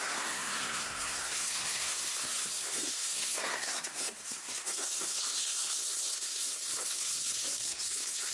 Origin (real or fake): fake